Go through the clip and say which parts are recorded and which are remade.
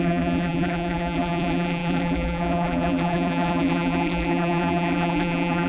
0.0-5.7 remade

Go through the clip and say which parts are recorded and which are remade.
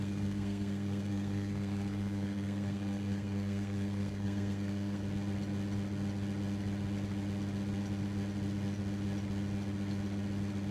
0.0-5.0 remade; 5.0-10.7 recorded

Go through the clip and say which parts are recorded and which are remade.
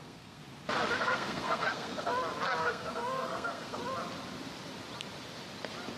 0.0-0.4 remade; 0.4-1.0 recorded; 1.0-2.1 remade; 2.1-2.6 recorded; 2.6-3.8 remade; 3.8-6.0 recorded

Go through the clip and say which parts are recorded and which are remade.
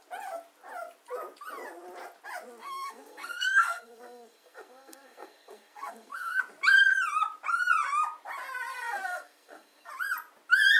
0.0-2.6 recorded; 2.6-6.4 remade; 6.4-8.7 recorded; 8.7-9.9 remade; 9.9-10.8 recorded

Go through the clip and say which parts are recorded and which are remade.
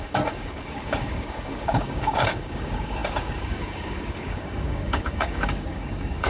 0.0-6.3 remade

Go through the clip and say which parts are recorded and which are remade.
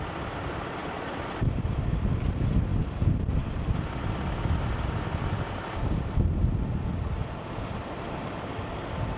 0.0-9.2 recorded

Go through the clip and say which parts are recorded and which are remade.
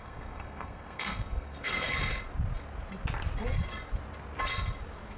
0.0-1.9 remade; 1.9-5.2 recorded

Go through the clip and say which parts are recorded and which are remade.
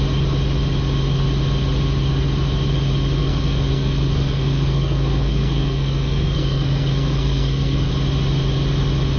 0.0-3.2 recorded; 3.2-7.9 remade; 7.9-9.2 recorded